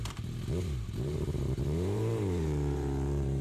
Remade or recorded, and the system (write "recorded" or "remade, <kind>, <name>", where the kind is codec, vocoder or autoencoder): remade, vocoder, BigVGAN v2